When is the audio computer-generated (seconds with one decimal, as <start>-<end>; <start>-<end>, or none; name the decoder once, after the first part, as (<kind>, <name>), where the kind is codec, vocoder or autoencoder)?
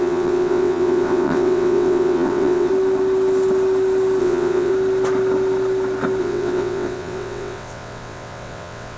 0.0-2.7 (vocoder, WaveNeXt); 4.2-4.7; 6.2-9.0